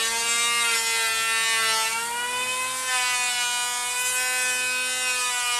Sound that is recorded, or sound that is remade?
recorded